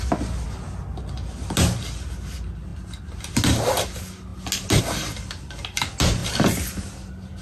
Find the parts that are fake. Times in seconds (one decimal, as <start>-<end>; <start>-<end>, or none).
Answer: none